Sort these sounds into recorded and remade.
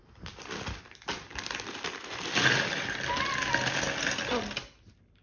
recorded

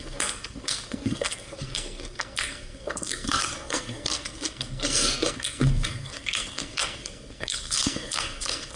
remade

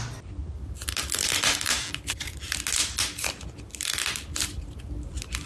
recorded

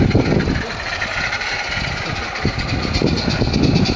remade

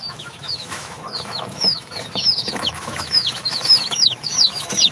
remade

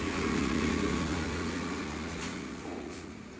remade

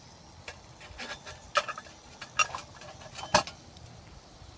recorded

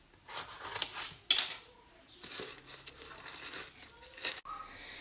recorded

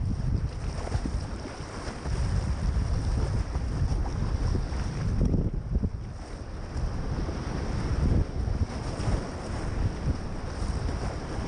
recorded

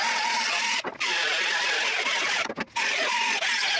recorded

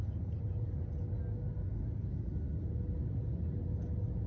recorded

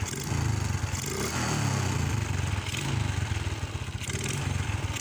recorded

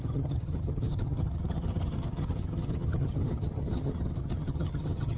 remade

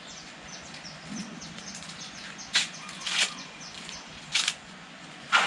remade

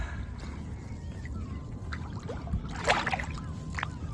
recorded